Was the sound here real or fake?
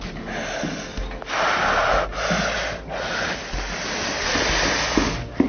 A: real